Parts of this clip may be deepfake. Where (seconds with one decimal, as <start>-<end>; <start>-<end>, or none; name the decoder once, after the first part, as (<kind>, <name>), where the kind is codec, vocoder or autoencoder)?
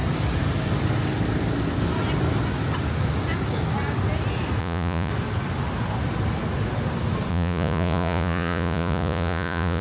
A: 4.6-5.1 (vocoder, Vocos); 7.3-9.8